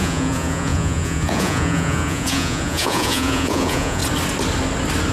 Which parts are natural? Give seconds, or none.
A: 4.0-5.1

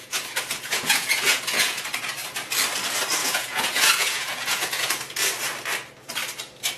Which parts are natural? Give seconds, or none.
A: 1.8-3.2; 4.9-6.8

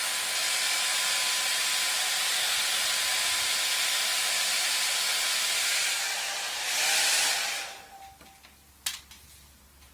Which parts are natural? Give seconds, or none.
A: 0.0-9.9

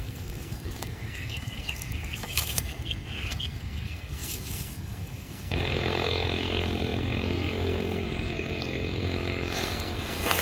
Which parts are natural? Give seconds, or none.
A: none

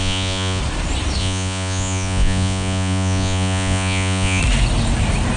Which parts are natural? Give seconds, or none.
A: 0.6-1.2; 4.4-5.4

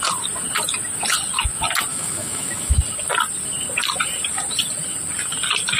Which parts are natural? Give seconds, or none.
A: 0.0-1.9; 2.7-5.8

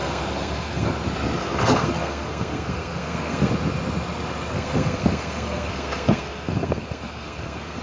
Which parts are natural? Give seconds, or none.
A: 0.9-1.4; 3.5-4.5

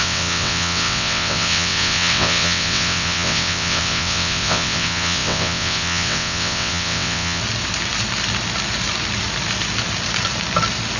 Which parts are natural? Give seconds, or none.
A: 7.4-11.0